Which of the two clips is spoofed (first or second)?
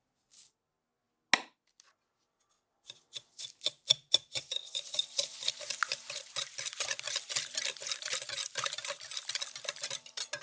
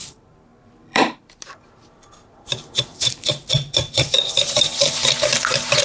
second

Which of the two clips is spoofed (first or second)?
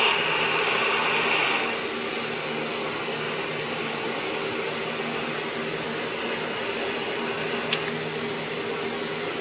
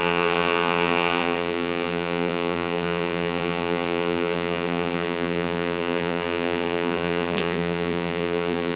second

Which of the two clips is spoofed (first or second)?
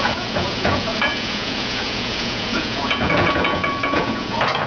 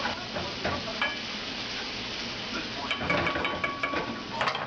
first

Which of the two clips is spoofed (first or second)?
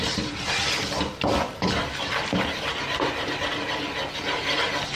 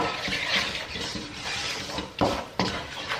second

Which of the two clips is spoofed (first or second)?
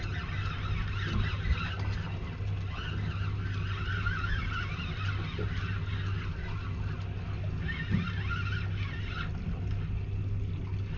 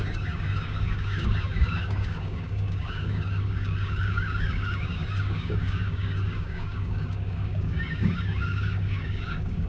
second